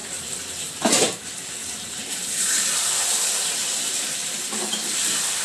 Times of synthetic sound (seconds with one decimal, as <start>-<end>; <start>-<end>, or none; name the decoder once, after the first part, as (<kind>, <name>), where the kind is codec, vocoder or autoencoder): 0.0-5.4 (vocoder, BigVGAN v2)